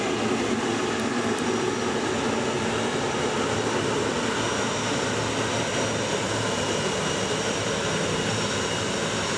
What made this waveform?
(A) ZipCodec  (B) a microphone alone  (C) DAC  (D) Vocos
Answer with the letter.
B